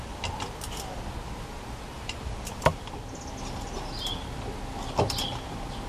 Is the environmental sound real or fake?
real